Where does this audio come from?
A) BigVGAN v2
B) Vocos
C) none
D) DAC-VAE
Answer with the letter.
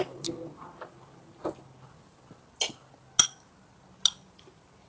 C